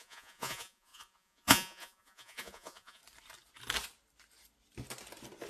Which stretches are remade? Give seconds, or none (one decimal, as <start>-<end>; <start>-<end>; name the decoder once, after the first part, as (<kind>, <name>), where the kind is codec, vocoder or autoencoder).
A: 0.0-3.0 (vocoder, Vocos)